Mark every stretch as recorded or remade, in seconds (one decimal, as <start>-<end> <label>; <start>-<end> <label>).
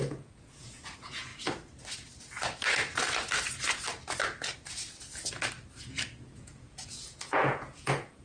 0.0-1.3 remade; 1.3-6.2 recorded; 6.2-8.2 remade